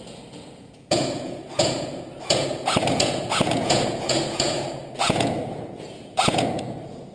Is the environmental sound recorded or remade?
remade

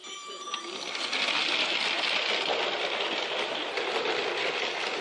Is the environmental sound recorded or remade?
recorded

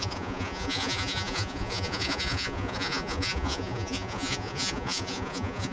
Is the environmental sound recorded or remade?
remade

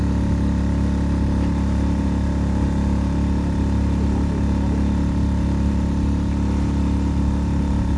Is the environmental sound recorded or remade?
recorded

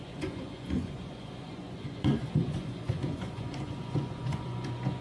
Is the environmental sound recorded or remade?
remade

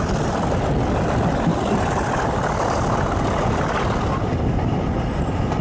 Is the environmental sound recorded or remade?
recorded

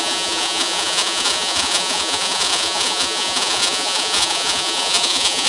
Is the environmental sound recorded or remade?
remade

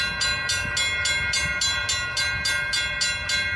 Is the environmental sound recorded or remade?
recorded